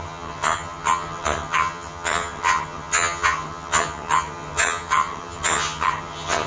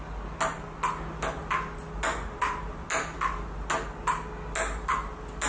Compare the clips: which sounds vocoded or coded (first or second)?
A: first